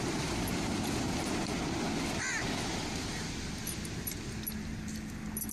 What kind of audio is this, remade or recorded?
recorded